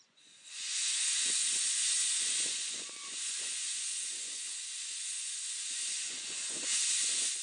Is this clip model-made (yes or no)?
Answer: yes